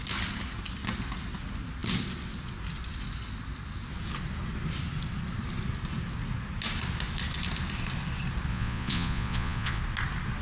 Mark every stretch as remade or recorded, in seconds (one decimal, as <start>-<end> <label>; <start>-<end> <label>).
0.0-8.5 recorded; 8.5-9.8 remade; 9.8-10.4 recorded